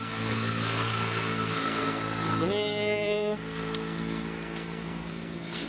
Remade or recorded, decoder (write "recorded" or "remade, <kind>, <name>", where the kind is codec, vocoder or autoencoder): remade, codec, SNAC